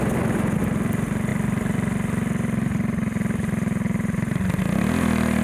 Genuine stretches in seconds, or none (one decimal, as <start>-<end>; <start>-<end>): 0.0-1.3; 4.5-5.4